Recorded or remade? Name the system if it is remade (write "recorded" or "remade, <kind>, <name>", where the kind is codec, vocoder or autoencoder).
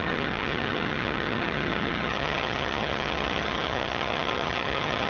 remade, vocoder, HiFi-GAN